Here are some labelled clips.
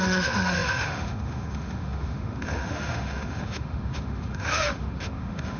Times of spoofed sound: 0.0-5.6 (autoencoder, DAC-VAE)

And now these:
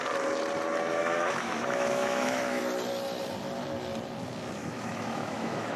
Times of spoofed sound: 1.0-2.6 (autoencoder, DAC-VAE); 4.6-5.8

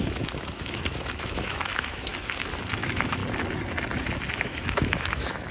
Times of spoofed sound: 0.0-2.1 (autoencoder, DAC-VAE); 2.7-3.2; 4.4-5.5

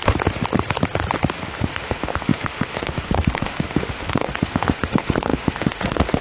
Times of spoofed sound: 1.6-6.2 (autoencoder, DAC-VAE)

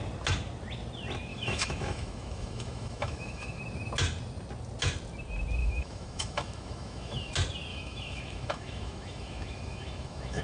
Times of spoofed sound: 1.3-3.6 (autoencoder, DAC-VAE); 5.6-7.3; 7.7-10.4